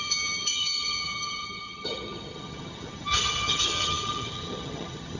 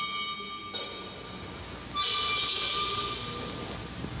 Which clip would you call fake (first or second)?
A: first